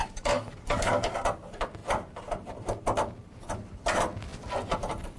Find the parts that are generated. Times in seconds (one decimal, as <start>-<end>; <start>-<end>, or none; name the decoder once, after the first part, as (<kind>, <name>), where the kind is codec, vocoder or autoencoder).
0.0-1.1 (codec, DAC)